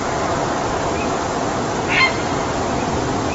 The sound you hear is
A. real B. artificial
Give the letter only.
A